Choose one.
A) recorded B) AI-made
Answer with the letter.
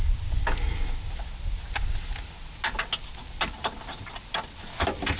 A